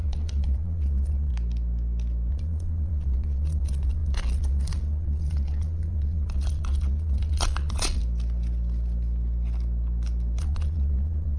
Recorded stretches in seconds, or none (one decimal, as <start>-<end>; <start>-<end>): 1.3-2.3; 8.0-10.4